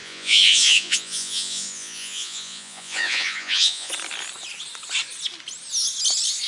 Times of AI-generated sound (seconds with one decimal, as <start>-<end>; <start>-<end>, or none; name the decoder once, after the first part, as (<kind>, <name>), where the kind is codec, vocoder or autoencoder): 0.0-3.9 (vocoder, Vocos)